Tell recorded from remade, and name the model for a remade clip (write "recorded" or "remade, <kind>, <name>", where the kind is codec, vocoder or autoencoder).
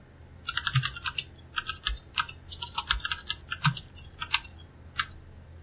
recorded